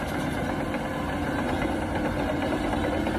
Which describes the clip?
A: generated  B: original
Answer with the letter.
B